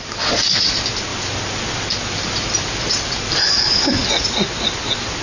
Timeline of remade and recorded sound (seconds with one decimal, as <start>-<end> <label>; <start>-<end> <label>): 0.0-5.2 recorded